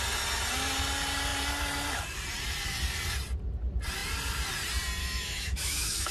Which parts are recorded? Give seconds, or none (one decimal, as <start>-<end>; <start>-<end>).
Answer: 0.0-5.0